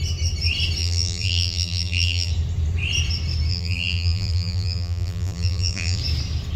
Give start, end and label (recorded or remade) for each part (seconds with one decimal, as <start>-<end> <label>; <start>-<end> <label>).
0.0-0.8 recorded; 0.8-2.3 remade; 2.3-3.5 recorded; 3.5-6.0 remade; 6.0-6.6 recorded